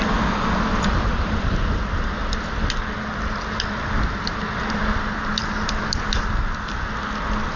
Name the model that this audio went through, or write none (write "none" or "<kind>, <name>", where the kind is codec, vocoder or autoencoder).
none